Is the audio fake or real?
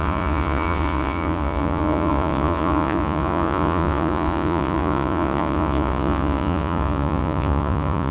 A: fake